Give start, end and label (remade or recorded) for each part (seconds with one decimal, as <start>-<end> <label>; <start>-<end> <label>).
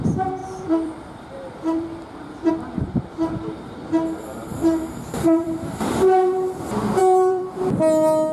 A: 0.0-0.4 recorded; 0.4-2.5 remade; 2.5-4.4 recorded; 4.4-5.9 remade; 5.9-7.0 recorded; 7.0-7.7 remade; 7.7-8.3 recorded